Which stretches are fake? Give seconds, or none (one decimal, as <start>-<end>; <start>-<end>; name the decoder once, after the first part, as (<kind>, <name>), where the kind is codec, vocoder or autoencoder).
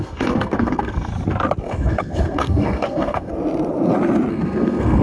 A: 0.0-1.1 (codec, SNAC); 1.6-3.3; 4.3-5.0